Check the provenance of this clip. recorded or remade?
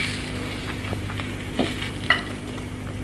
recorded